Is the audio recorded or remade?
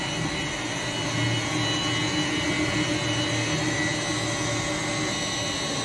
recorded